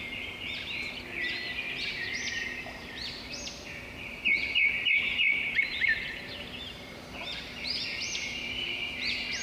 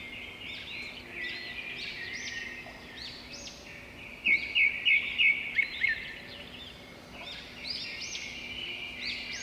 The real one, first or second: second